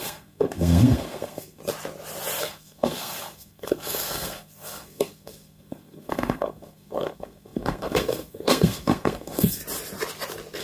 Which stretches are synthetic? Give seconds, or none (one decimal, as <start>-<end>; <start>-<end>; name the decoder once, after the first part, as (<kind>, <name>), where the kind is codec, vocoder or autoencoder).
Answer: 0.0-1.6 (codec, SNAC); 2.4-9.6

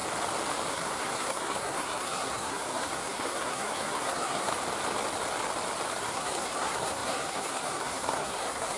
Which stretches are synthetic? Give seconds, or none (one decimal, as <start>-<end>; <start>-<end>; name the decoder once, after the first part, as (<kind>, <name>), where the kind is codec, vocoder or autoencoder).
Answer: 0.7-4.5 (codec, SNAC); 6.0-8.8